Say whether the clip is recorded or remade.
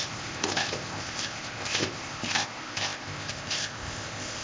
remade